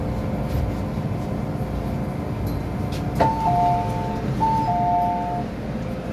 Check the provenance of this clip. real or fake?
real